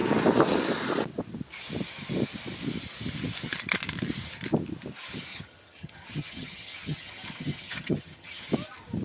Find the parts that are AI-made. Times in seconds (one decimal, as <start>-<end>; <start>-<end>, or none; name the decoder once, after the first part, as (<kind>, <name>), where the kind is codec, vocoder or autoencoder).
5.3-8.4 (vocoder, HiFi-GAN)

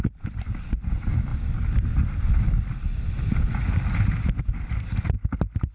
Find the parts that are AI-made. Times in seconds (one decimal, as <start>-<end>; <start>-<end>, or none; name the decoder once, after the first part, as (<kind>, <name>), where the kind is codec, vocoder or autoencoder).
none

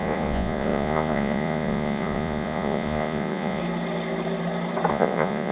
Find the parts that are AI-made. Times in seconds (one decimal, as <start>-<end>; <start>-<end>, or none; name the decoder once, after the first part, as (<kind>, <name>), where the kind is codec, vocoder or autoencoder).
0.0-3.6 (vocoder, Vocos); 4.9-5.5

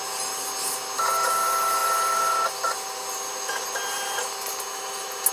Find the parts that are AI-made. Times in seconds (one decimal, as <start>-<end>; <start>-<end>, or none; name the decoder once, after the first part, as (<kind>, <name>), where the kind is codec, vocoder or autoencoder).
none